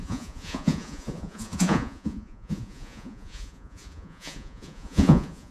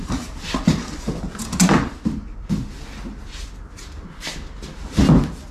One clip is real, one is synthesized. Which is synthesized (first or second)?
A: first